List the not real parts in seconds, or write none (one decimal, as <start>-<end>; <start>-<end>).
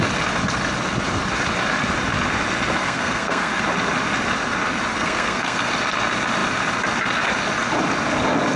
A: 2.8-3.6; 4.9-5.7